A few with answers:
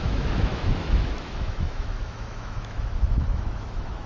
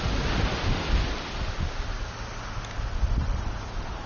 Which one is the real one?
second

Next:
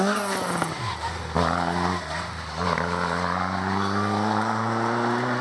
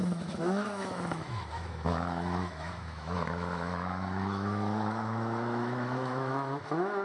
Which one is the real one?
first